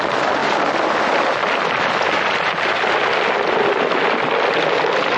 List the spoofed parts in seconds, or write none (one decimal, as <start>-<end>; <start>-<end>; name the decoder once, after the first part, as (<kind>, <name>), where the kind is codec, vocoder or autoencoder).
none